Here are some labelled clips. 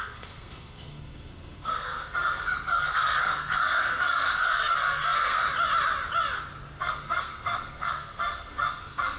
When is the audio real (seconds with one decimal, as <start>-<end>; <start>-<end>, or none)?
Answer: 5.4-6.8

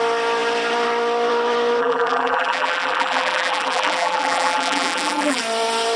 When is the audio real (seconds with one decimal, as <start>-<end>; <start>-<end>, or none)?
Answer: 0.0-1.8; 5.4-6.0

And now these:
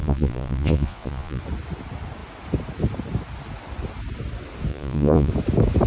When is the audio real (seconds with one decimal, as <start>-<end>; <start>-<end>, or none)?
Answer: 1.4-4.7; 5.3-5.9

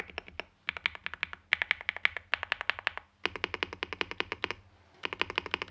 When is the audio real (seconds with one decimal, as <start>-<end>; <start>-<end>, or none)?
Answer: 0.0-5.7

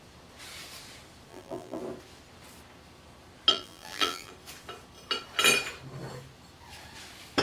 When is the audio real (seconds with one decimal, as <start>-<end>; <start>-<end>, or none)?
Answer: 0.0-1.3; 1.8-3.5; 4.3-7.4

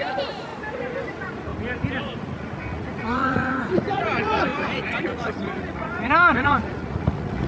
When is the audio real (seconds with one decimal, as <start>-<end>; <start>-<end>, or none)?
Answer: 0.5-1.1; 1.5-2.0

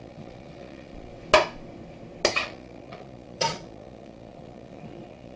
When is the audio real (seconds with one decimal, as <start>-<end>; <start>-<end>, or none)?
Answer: 1.1-2.3

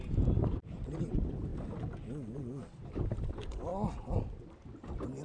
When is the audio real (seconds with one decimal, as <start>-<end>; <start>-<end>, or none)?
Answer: 1.5-2.9; 3.7-5.2